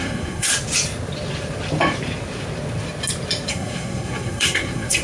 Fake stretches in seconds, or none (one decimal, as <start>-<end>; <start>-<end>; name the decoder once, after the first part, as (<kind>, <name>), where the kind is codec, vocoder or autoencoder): 0.0-0.5 (codec, SNAC); 3.5-5.0